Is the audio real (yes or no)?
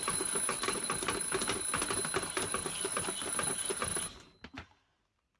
yes